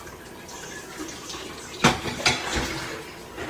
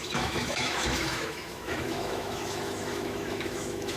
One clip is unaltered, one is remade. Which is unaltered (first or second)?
first